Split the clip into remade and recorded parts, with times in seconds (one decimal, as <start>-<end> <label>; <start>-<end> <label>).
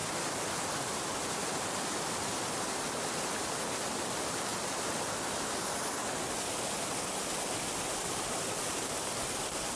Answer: 0.0-9.8 recorded